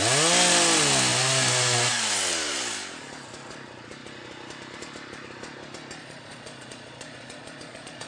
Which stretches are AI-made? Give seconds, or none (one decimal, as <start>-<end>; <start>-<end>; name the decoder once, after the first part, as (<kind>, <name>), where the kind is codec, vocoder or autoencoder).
6.0-8.1 (vocoder, Vocos)

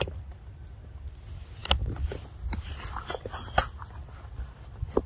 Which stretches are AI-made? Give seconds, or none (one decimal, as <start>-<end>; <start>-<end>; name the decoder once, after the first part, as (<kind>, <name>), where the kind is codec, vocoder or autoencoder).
none

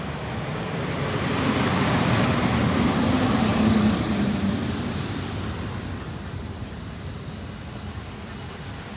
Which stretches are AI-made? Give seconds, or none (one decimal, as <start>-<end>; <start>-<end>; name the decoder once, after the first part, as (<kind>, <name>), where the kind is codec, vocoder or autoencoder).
none

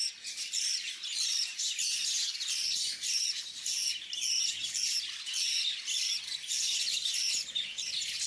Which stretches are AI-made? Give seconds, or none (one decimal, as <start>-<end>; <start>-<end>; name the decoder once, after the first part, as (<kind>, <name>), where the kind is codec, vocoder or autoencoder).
none

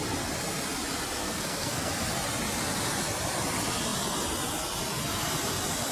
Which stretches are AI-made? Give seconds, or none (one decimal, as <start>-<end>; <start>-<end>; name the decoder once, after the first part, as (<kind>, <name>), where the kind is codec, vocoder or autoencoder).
1.2-1.9 (codec, SNAC)

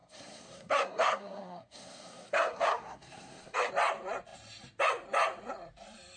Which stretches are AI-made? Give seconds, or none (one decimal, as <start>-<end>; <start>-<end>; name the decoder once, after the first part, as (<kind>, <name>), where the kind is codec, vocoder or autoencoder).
0.0-3.7 (codec, SNAC)